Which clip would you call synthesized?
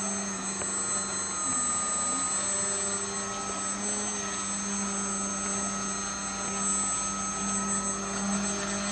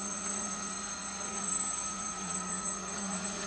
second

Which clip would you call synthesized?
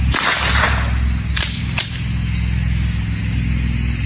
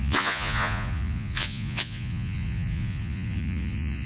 second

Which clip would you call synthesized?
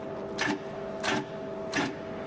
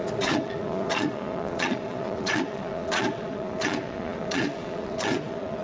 second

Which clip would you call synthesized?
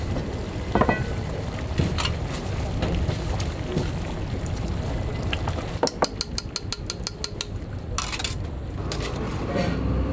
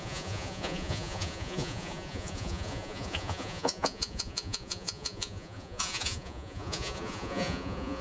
second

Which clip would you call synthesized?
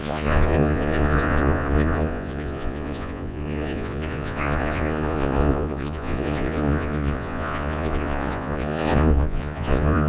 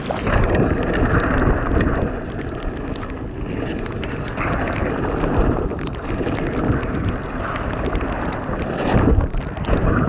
first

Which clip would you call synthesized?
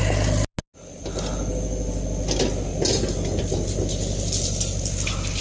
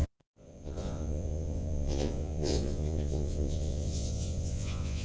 second